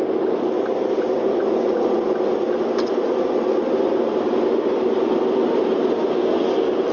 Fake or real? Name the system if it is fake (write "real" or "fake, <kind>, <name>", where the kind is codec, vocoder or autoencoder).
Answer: real